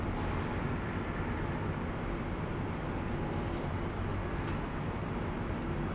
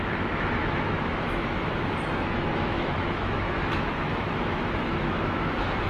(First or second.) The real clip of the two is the first